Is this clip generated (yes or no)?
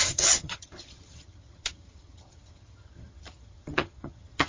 yes